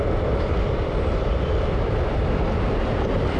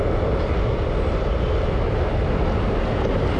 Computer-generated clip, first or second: first